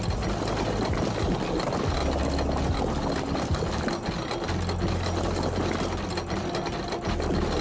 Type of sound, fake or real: real